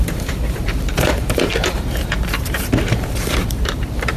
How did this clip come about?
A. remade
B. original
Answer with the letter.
A